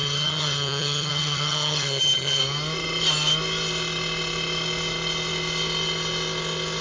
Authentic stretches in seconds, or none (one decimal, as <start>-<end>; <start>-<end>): 2.4-6.8